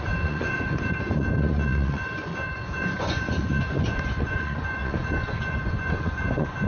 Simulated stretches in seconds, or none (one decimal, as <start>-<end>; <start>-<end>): 0.0-6.7